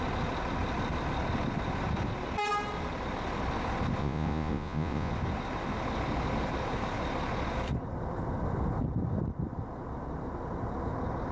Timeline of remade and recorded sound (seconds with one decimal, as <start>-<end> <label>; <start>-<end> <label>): 0.0-4.0 recorded; 4.0-5.1 remade; 5.1-11.3 recorded